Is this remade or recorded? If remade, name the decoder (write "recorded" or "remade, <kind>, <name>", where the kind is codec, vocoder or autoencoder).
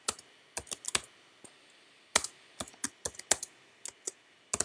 recorded